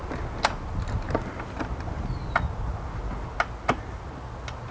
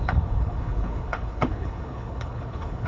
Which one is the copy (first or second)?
second